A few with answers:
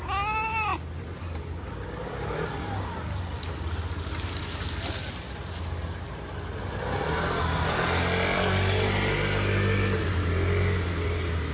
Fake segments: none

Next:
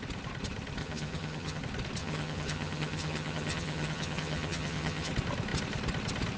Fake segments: 0.8-1.6 (vocoder, HiFi-GAN); 2.0-5.1